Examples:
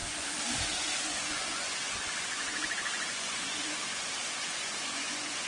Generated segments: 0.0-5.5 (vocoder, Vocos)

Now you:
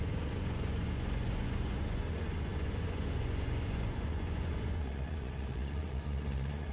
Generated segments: 0.0-6.7 (vocoder, Vocos)

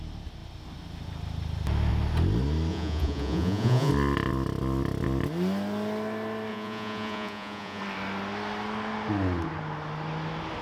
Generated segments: 2.7-3.9 (vocoder, Vocos); 6.5-7.8